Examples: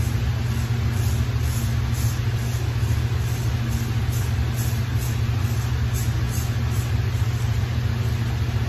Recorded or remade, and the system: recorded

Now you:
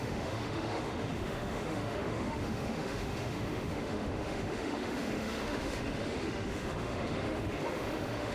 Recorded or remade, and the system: remade, autoencoder, DAC-VAE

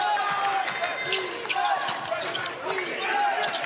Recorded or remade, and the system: recorded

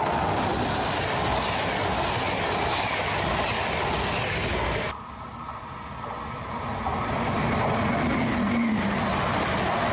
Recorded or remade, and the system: recorded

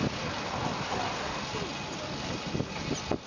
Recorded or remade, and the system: recorded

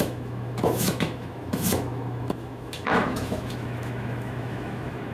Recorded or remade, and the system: remade, autoencoder, DAC-VAE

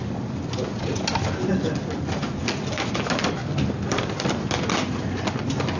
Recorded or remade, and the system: recorded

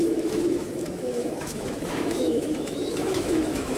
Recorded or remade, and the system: remade, autoencoder, DAC-VAE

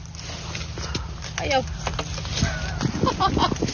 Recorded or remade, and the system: recorded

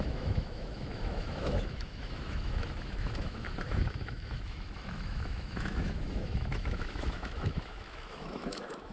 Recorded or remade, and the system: remade, autoencoder, DAC-VAE